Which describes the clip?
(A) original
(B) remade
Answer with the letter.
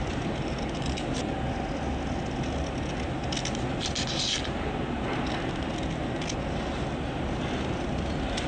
A